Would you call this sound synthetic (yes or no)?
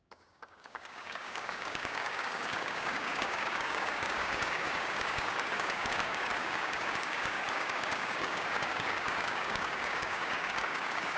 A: yes